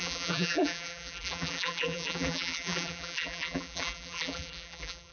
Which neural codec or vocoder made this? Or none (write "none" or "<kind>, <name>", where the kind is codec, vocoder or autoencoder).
vocoder, BigVGAN v2